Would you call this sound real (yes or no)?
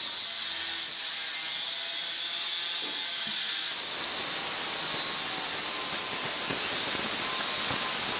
yes